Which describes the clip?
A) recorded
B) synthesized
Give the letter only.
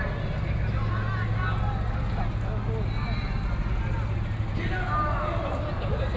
A